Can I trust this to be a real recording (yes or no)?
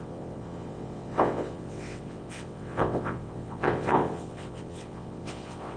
no